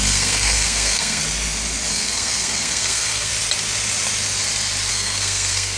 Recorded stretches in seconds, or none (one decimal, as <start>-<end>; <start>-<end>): 1.2-1.9; 3.3-4.9